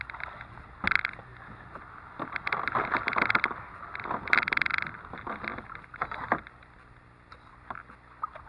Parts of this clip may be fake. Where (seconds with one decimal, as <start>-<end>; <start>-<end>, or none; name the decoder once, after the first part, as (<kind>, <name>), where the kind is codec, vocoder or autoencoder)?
none